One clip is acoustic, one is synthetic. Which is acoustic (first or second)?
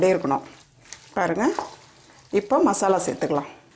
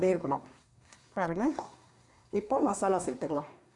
first